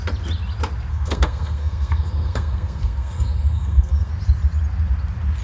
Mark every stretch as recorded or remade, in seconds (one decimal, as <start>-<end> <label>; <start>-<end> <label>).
0.0-0.9 recorded; 0.9-4.1 remade; 4.1-5.4 recorded